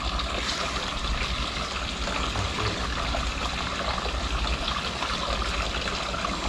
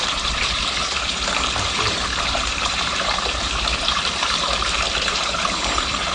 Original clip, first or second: first